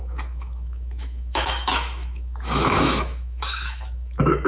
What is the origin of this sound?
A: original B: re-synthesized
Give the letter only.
B